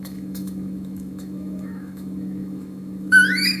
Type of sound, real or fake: fake